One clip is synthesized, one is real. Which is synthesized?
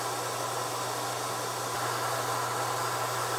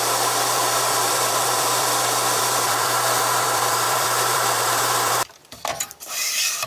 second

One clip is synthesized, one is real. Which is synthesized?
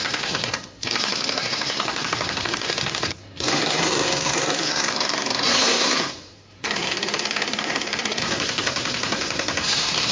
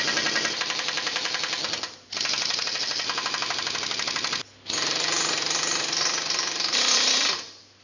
first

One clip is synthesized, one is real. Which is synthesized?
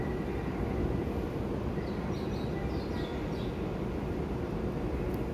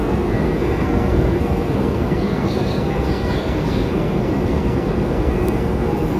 second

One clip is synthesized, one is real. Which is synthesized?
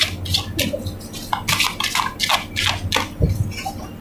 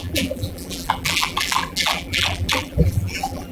second